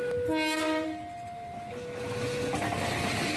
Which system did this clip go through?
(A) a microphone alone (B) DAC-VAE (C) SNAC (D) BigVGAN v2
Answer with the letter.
A